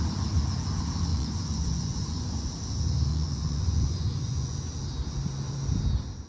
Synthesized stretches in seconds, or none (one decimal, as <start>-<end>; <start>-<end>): 1.1-2.5; 3.1-4.6